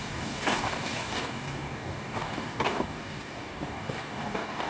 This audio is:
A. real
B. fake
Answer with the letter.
B